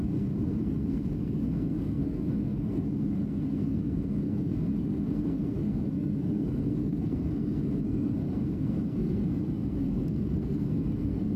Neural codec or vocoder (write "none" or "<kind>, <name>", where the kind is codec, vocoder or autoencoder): codec, SNAC